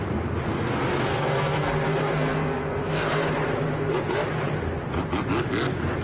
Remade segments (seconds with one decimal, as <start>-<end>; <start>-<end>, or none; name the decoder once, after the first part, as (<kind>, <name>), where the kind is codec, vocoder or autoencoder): 1.1-2.9 (codec, SNAC)